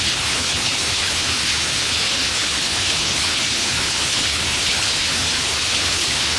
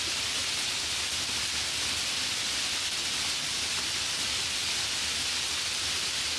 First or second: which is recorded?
second